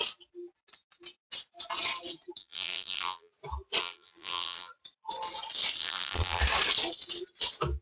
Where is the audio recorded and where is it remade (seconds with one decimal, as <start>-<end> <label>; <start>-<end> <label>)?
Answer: 0.0-2.4 recorded; 2.4-3.3 remade; 3.3-3.8 recorded; 3.8-4.7 remade; 4.7-5.8 recorded; 5.8-6.4 remade; 6.4-7.8 recorded